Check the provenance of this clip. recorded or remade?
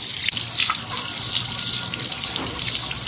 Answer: remade